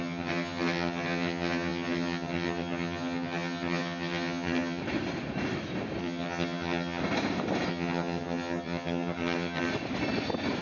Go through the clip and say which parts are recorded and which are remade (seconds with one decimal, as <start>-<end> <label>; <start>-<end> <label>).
0.0-4.8 remade; 4.8-6.0 recorded; 6.0-7.0 remade; 7.0-7.7 recorded; 7.7-9.7 remade; 9.7-10.6 recorded